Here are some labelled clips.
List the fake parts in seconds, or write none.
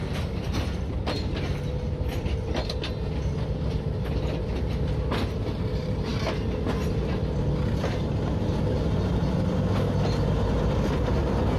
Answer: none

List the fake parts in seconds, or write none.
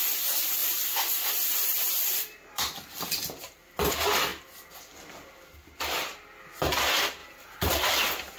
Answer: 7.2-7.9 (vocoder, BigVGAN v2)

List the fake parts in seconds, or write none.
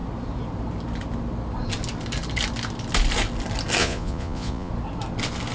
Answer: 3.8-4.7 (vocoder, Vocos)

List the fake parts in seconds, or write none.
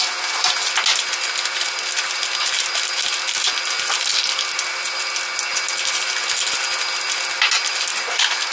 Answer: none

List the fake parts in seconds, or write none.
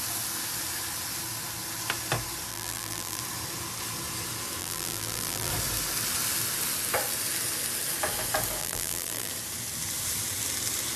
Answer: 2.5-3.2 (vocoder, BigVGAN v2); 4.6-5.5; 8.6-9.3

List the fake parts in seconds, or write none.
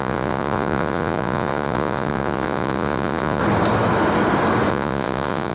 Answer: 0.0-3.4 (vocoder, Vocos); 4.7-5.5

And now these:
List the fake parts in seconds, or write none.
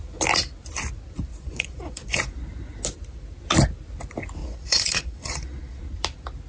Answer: 1.3-2.4 (vocoder, Vocos); 4.4-5.8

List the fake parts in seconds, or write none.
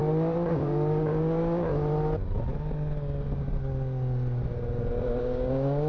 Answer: 0.5-1.7 (codec, DAC); 5.2-5.9